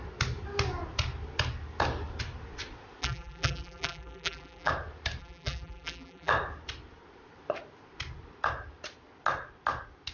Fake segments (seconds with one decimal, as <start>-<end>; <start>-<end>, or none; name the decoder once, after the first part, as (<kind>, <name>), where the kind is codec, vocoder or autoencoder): 3.0-4.7 (vocoder, BigVGAN v2); 5.2-6.3